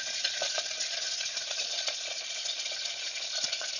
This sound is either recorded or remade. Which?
remade